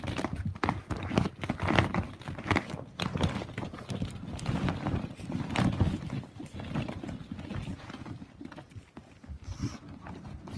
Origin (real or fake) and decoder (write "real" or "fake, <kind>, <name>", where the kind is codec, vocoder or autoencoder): real